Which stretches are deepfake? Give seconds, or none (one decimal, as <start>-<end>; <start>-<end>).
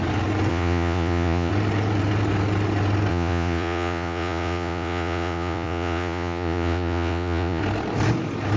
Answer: 0.5-1.5; 3.1-7.6